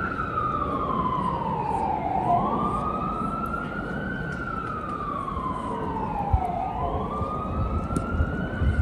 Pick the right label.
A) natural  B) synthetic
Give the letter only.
A